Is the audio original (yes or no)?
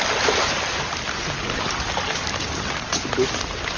yes